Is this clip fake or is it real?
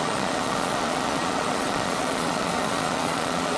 fake